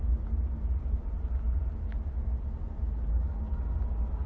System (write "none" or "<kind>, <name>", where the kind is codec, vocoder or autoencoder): none